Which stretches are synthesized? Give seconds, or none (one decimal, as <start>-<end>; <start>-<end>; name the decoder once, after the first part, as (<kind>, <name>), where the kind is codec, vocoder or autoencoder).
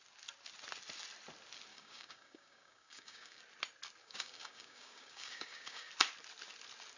1.7-3.4 (codec, DAC); 4.0-5.9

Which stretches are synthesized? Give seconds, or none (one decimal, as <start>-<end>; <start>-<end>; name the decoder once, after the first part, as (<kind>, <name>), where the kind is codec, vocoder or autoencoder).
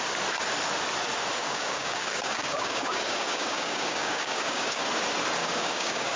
1.4-4.8 (codec, DAC); 5.4-6.2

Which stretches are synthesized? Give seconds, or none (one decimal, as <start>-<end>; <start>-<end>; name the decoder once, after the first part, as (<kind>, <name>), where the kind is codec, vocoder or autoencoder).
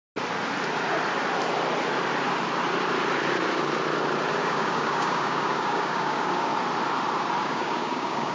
4.4-6.5 (codec, DAC); 7.4-8.3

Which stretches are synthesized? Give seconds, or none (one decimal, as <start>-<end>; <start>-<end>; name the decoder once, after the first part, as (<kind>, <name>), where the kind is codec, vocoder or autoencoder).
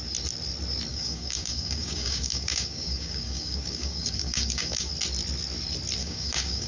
0.9-4.9 (codec, DAC); 6.0-6.7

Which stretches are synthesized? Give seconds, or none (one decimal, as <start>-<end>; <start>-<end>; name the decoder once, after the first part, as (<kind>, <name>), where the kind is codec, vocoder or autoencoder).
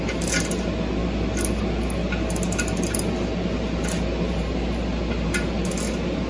none